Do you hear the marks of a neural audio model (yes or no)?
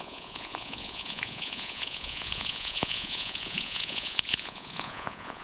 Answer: yes